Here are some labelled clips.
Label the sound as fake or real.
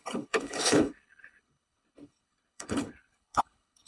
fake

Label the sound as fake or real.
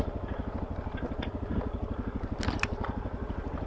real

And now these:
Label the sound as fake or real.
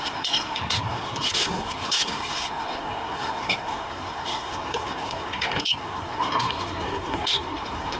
fake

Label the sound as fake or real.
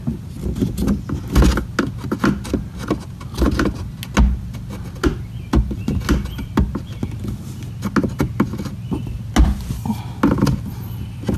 real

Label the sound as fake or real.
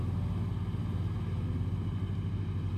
real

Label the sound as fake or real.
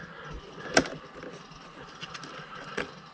real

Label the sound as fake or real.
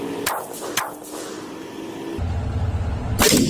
real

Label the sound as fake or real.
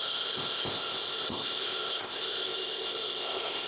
fake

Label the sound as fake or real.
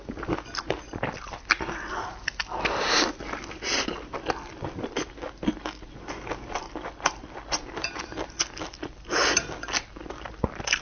real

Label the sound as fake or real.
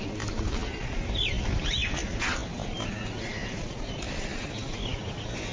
real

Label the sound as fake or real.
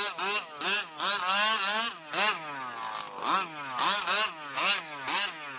real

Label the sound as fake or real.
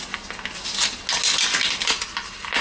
real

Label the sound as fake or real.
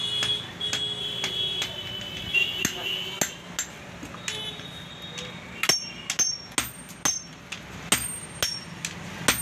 real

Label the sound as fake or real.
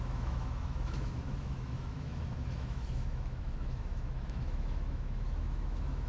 fake